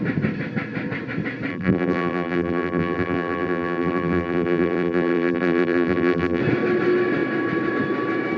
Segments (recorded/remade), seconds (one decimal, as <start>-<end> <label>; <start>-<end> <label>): 0.0-1.5 recorded; 1.5-6.4 remade; 6.4-8.4 recorded